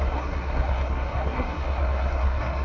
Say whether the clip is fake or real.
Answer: fake